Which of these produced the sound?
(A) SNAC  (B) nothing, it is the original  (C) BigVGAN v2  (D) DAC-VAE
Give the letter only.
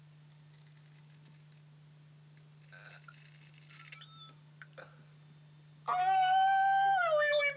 B